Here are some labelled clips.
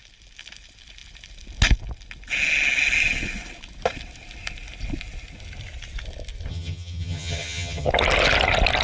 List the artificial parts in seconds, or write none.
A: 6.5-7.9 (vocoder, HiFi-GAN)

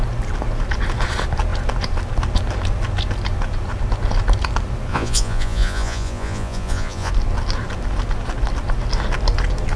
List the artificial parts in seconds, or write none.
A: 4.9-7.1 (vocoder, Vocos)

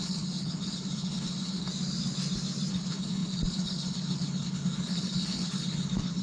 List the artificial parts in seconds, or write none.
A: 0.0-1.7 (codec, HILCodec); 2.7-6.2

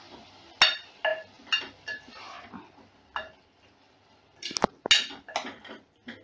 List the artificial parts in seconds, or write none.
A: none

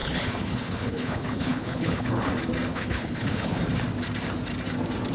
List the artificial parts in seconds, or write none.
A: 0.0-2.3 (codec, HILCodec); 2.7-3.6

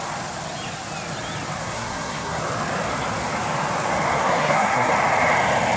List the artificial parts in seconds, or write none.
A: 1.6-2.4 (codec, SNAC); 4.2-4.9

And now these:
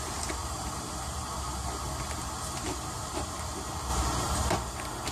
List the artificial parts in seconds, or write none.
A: 0.4-3.5 (vocoder, BigVGAN v2); 3.9-4.5